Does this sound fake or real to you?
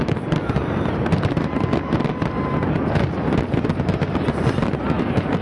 real